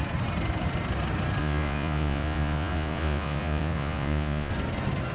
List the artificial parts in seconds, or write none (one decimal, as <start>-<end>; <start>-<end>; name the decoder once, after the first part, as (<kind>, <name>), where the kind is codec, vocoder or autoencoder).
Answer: 1.4-4.5 (vocoder, Vocos)